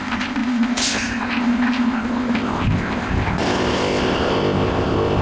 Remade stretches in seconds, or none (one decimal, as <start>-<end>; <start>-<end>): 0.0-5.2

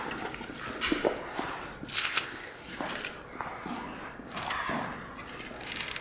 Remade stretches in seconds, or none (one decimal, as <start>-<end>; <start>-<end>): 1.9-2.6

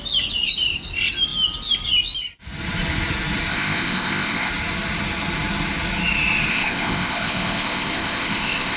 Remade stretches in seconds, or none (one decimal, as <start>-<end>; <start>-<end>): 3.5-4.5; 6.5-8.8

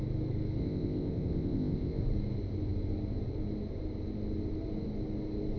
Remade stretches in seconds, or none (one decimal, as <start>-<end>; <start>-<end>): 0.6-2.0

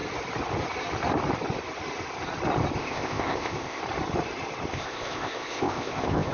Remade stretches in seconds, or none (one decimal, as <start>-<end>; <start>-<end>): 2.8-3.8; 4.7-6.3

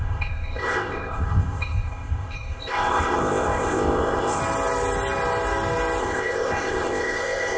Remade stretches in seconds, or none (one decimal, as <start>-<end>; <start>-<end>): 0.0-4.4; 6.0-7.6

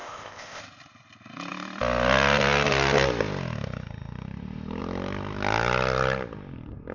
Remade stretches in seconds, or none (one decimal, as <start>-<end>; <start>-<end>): 0.0-0.6